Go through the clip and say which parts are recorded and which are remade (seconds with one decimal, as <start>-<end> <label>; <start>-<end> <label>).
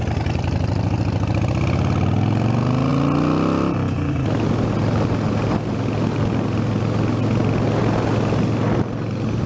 0.0-9.5 recorded